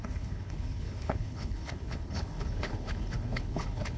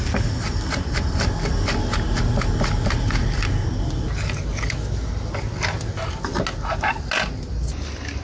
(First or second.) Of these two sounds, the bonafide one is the second